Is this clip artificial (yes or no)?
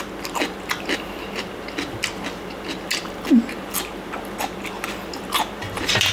no